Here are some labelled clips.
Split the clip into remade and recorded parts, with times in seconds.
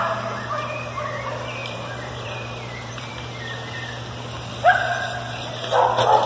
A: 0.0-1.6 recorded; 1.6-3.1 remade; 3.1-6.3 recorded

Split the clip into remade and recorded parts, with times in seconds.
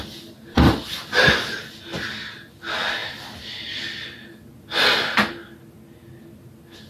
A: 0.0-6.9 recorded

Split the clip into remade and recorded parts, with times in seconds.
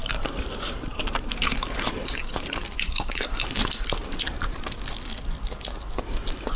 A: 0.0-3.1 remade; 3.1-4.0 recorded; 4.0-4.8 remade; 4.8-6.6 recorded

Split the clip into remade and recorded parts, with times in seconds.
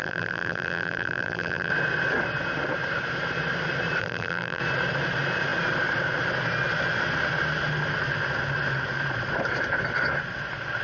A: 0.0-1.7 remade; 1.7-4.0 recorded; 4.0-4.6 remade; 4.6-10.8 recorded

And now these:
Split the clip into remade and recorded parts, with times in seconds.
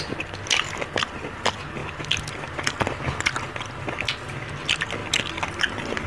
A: 0.0-6.1 recorded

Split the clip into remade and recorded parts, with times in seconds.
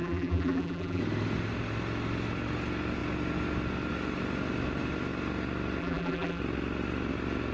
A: 0.0-1.0 remade; 1.0-5.8 recorded; 5.8-6.4 remade; 6.4-7.5 recorded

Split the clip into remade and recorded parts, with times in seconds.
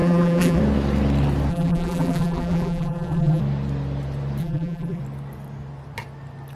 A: 0.0-0.6 remade; 0.6-1.5 recorded; 1.5-3.4 remade; 3.4-4.4 recorded; 4.4-5.0 remade; 5.0-6.6 recorded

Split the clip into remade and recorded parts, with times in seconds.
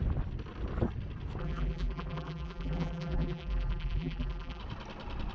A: 0.0-1.4 recorded; 1.4-4.6 remade; 4.6-5.3 recorded